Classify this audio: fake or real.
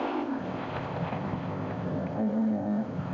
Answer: fake